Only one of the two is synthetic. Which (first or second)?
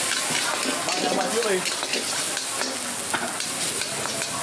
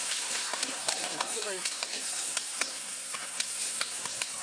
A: second